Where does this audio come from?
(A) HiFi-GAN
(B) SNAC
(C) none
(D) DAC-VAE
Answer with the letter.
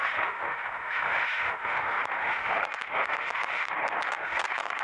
D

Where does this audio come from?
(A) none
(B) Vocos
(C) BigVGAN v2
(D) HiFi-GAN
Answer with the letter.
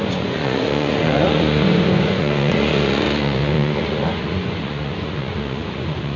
B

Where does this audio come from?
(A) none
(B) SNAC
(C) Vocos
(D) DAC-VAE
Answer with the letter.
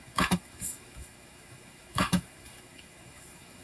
D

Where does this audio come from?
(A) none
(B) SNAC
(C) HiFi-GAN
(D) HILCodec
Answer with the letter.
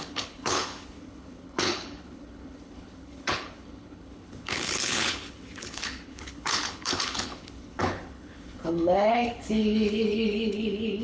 D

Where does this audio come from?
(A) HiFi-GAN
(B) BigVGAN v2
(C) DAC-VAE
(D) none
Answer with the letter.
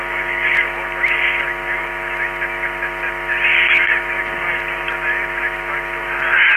D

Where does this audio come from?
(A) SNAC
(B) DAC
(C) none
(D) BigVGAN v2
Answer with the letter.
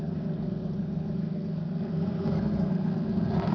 A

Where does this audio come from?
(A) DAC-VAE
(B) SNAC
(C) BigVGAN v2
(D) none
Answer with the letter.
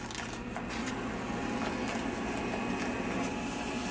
D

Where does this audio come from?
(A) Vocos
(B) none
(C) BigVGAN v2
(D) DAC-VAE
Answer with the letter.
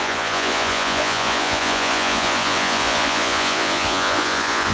A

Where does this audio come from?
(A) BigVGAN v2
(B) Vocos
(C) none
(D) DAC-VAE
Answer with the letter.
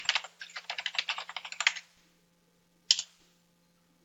C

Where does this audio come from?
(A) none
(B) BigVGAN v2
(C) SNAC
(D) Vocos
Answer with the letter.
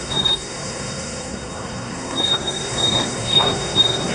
C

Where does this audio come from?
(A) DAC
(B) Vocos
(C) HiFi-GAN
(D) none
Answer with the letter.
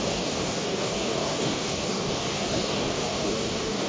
A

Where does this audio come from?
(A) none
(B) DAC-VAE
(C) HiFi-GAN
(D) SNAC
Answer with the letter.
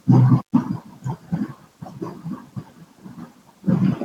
A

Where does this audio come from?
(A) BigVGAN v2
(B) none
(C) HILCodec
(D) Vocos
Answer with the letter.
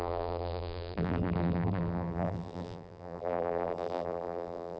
A